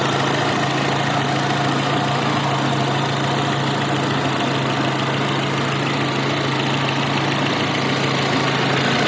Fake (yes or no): no